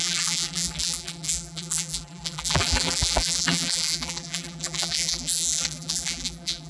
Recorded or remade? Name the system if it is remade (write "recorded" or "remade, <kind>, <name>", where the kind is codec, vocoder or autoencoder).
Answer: remade, vocoder, BigVGAN v2